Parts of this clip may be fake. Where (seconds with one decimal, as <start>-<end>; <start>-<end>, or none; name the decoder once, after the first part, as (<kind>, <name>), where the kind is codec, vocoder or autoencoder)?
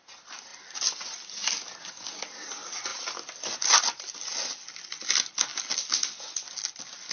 none